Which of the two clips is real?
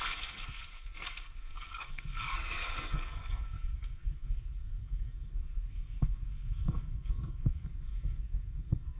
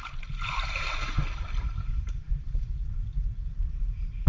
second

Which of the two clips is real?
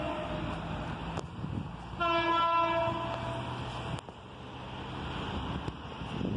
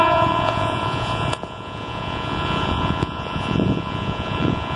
first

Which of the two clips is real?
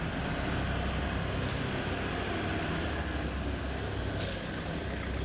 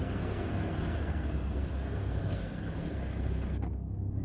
first